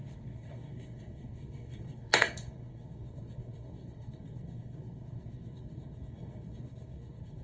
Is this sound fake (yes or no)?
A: yes